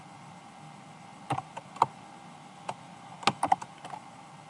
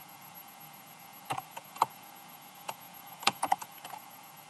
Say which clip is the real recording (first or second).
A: first